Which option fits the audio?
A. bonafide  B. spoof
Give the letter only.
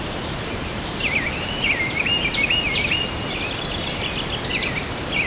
A